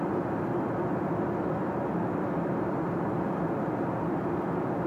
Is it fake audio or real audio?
real